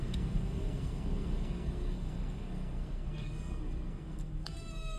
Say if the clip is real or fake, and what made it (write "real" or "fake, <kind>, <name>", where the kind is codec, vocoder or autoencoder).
fake, codec, SNAC